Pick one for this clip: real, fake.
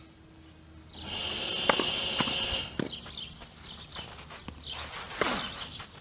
real